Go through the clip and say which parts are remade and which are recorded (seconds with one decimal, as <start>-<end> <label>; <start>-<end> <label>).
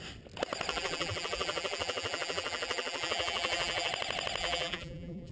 0.0-0.7 recorded; 0.7-3.9 remade; 3.9-4.4 recorded; 4.4-5.3 remade